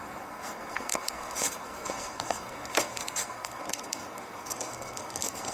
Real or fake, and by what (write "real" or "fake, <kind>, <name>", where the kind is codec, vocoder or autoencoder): fake, codec, SNAC